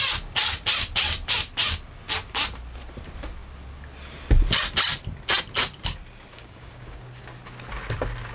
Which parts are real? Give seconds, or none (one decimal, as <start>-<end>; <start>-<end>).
0.0-6.3; 7.2-8.3